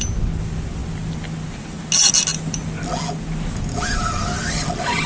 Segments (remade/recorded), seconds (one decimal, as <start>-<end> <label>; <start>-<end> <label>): 0.0-5.1 recorded